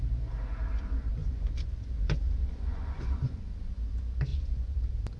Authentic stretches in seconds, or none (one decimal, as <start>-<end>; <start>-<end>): 0.0-1.2; 3.4-4.3; 4.8-5.2